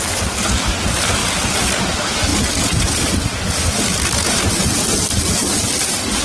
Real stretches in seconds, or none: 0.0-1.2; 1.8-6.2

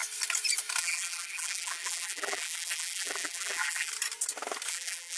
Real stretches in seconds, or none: 0.0-0.8; 3.9-4.7

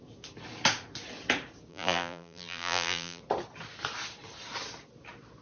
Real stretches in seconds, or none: 0.0-1.7; 3.2-5.4

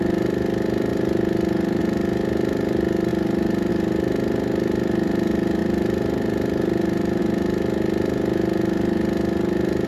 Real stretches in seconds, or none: 0.0-5.6; 7.2-9.9

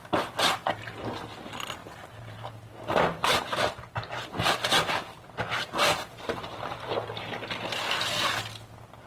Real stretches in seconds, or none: 0.0-1.8; 6.5-9.1

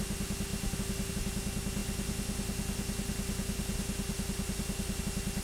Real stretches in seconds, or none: 0.0-5.4